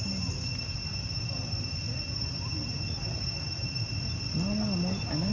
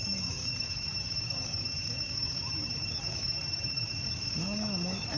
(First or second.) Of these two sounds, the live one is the first